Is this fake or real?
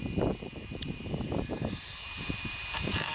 fake